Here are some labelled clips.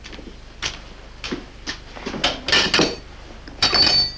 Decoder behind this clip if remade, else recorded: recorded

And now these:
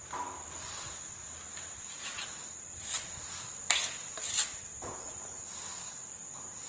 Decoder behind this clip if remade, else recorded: recorded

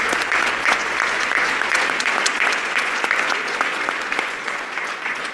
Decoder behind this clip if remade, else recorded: remade, vocoder, Vocos